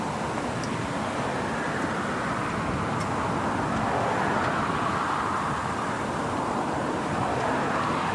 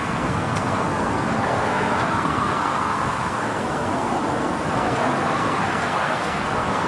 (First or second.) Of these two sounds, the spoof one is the second